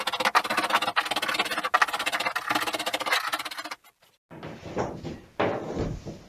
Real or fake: real